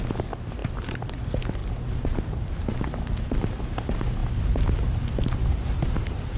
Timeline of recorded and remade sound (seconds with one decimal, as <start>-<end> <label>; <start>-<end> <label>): 0.0-0.6 recorded; 0.6-1.1 remade; 1.1-1.6 recorded; 1.6-3.7 remade; 3.7-6.4 recorded